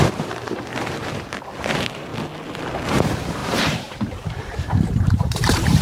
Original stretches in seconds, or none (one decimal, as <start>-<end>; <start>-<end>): 2.1-2.9